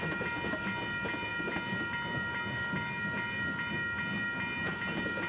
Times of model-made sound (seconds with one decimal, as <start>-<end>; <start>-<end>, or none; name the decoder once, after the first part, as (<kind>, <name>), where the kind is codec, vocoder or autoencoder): none